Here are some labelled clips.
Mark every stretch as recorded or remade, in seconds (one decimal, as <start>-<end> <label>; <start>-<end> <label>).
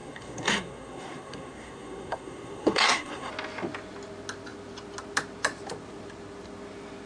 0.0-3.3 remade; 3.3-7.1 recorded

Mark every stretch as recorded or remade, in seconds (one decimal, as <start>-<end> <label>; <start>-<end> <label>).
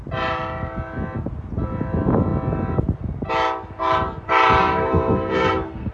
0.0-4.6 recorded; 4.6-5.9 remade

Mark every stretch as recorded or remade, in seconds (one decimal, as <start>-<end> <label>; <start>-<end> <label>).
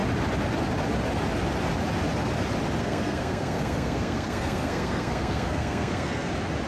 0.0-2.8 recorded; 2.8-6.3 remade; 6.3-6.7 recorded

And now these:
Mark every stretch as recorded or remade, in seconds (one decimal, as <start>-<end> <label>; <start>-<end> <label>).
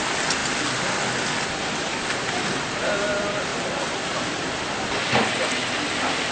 0.0-3.5 recorded; 3.5-4.5 remade; 4.5-6.3 recorded